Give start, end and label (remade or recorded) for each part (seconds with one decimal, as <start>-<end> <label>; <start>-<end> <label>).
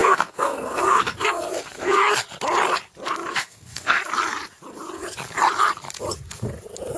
0.0-2.0 remade; 2.0-3.3 recorded; 3.3-4.0 remade; 4.0-7.0 recorded